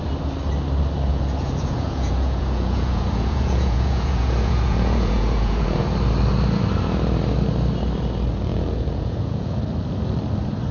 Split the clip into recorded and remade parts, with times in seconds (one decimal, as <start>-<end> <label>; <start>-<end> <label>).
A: 0.0-1.1 recorded; 1.1-5.8 remade; 5.8-8.5 recorded; 8.5-9.6 remade; 9.6-10.7 recorded